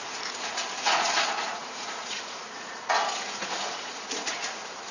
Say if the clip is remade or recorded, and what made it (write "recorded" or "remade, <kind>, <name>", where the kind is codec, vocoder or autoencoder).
remade, vocoder, Vocos